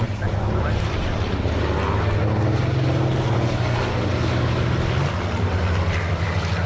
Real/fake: real